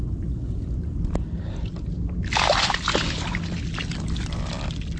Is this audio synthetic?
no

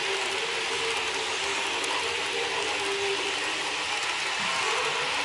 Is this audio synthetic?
no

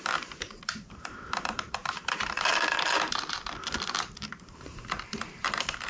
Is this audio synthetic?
yes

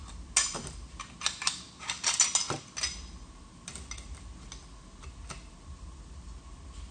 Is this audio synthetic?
no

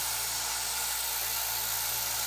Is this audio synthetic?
no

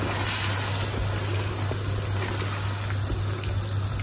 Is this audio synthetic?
no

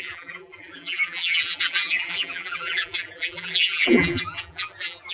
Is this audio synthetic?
yes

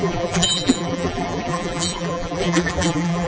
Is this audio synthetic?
yes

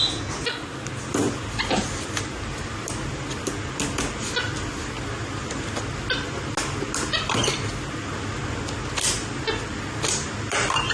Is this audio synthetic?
no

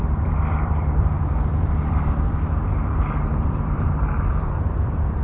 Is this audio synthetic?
yes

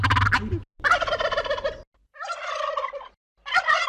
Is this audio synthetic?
no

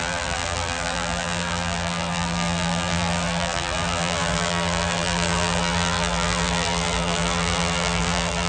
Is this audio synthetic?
yes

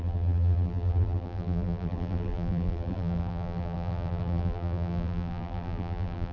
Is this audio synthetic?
yes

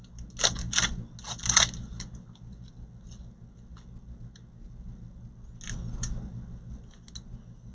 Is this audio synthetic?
no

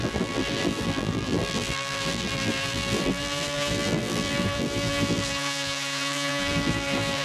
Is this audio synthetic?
yes